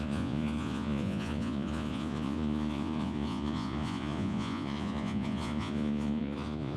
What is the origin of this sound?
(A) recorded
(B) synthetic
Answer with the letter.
B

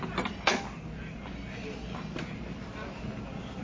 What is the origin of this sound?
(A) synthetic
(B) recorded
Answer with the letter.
B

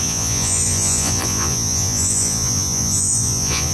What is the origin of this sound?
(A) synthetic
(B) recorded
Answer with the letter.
A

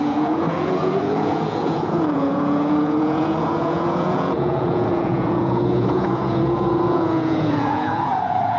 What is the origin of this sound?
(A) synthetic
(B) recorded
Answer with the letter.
A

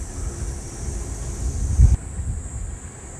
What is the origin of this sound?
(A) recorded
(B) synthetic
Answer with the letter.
A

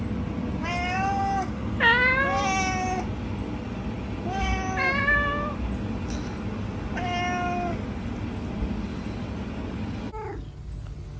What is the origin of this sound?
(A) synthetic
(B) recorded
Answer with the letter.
B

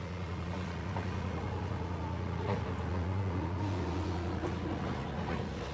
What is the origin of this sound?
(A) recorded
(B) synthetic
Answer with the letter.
B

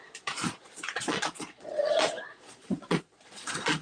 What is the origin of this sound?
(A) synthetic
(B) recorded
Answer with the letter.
A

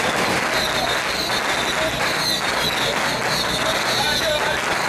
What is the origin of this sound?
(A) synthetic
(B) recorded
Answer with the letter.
B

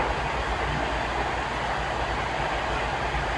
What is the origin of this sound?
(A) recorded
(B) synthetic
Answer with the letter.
A